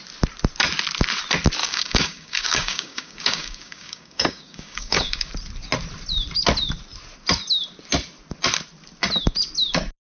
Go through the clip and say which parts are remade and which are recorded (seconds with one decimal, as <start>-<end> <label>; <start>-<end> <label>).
0.0-1.6 recorded; 1.6-5.3 remade; 5.3-10.2 recorded